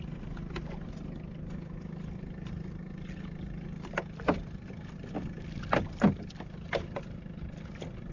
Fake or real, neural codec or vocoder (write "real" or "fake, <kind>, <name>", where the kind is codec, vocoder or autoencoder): real